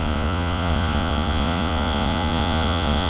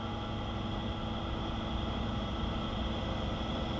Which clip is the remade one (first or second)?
first